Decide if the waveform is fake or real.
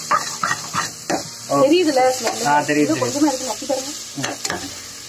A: real